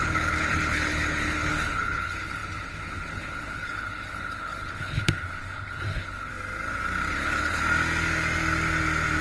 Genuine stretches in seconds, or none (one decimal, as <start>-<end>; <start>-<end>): 6.3-7.1; 7.6-9.2